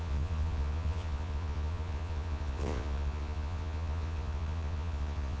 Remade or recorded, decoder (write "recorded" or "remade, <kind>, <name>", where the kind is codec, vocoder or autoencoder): remade, vocoder, Vocos